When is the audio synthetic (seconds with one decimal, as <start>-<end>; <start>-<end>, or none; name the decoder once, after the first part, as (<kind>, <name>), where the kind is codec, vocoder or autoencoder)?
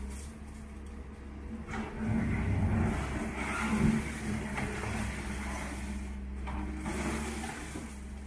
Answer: none